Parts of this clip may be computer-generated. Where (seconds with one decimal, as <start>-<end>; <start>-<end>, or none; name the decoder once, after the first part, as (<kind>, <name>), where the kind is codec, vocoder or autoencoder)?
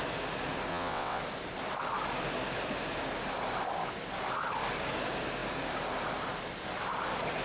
0.7-1.2 (vocoder, WaveNeXt)